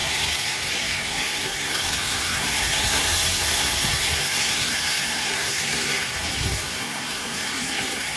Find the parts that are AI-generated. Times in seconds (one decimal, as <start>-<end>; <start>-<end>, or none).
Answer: 0.0-8.2